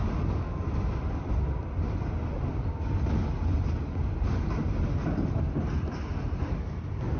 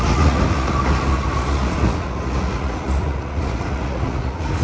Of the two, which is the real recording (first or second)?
first